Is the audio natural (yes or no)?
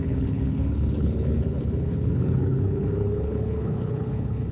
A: no